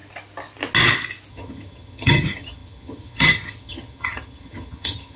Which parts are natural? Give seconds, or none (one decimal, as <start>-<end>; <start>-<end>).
0.0-1.3